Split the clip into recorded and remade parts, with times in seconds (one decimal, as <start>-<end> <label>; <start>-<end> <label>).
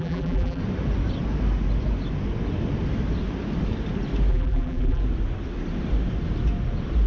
0.0-0.6 remade; 0.6-4.3 recorded; 4.3-5.0 remade; 5.0-7.1 recorded